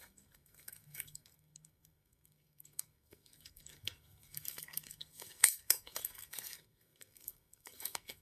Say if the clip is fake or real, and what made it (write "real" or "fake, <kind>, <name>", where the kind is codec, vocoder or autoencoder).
fake, codec, SNAC